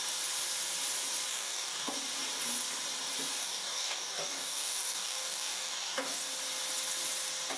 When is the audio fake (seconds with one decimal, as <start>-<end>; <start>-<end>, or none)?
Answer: 1.3-1.9; 3.4-6.2